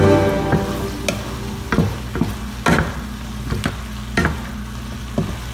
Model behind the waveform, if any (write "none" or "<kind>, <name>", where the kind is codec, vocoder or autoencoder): none